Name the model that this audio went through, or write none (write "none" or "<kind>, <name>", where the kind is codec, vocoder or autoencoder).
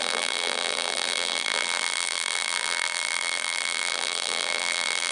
vocoder, BigVGAN v2